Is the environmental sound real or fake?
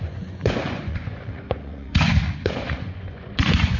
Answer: fake